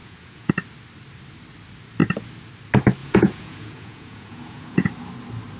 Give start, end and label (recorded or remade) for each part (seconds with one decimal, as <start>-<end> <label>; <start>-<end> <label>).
0.0-0.5 remade; 0.5-3.0 recorded; 3.0-4.9 remade; 4.9-5.6 recorded